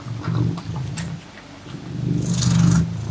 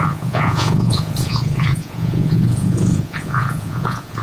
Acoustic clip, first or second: first